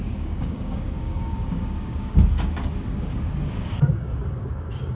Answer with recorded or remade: remade